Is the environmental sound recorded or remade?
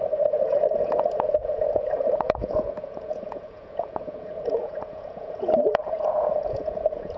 remade